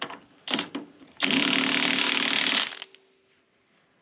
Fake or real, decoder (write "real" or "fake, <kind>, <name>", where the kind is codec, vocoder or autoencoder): real